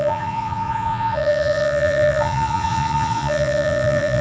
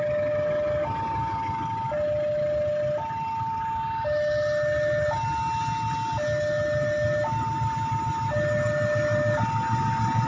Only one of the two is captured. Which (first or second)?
second